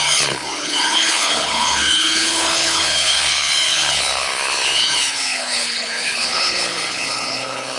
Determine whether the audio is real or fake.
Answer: fake